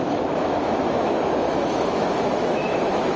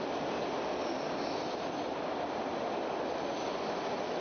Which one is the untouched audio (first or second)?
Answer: second